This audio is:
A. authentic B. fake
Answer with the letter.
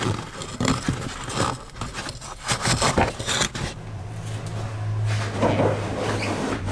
A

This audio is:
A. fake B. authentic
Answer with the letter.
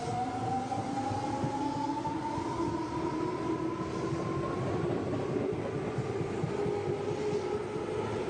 B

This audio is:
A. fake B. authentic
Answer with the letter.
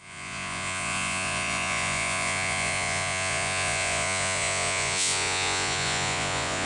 A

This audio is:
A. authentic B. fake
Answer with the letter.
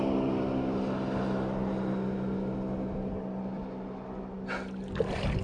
A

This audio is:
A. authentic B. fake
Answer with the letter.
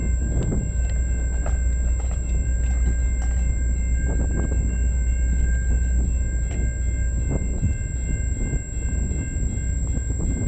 A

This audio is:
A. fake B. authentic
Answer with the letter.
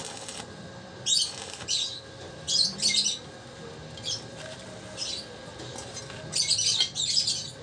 B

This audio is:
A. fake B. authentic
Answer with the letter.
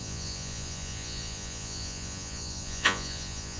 A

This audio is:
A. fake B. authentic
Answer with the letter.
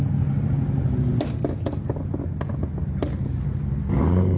B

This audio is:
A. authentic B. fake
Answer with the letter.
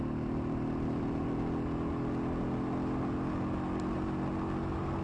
A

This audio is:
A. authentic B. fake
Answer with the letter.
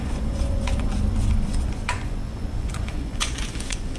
B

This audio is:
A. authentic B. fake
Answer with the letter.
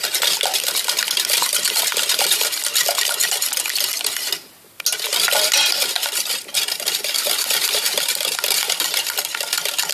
A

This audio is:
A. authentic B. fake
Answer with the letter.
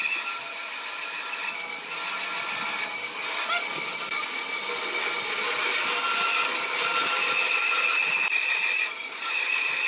A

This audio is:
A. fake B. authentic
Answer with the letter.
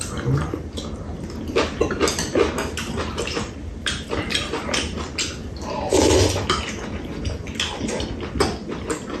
B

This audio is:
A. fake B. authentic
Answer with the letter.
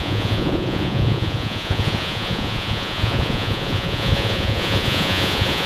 A